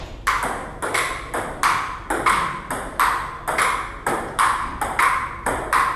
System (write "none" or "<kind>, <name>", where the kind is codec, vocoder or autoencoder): none